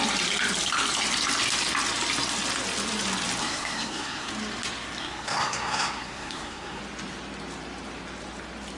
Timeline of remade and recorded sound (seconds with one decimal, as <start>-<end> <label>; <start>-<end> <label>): 0.0-3.4 recorded; 3.4-4.3 remade; 4.3-5.0 recorded; 5.0-6.8 remade; 6.8-8.8 recorded